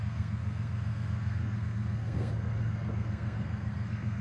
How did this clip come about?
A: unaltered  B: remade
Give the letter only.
B